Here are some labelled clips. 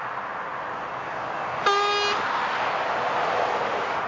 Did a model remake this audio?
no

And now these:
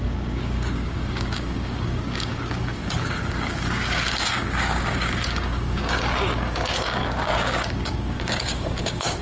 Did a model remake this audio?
yes